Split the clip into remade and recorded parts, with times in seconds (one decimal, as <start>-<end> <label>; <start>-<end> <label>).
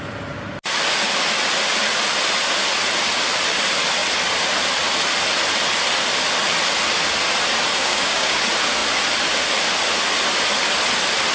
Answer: 0.0-7.8 recorded; 7.8-8.4 remade; 8.4-11.3 recorded